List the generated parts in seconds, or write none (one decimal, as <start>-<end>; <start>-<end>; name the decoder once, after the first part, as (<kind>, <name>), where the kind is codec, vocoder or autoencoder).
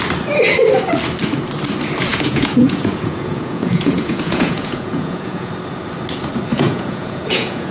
2.1-5.5 (vocoder, Vocos); 6.5-7.7